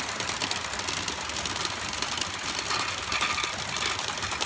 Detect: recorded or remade recorded